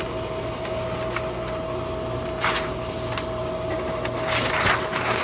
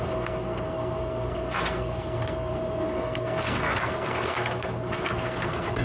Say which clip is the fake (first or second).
second